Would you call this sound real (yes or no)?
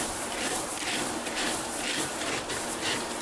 no